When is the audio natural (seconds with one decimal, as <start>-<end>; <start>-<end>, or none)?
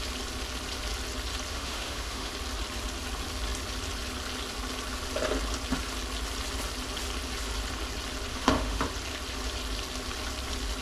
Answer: 0.0-1.5; 2.3-8.3; 8.8-10.8